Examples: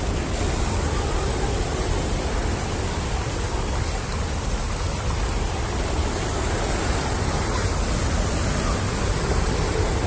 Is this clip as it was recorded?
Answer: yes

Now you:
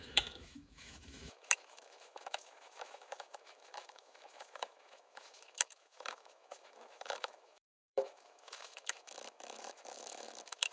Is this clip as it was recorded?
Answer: no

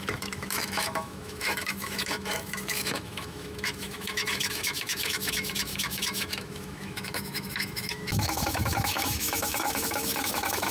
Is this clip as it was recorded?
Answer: no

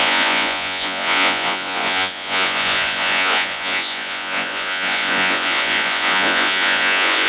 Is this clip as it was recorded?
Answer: no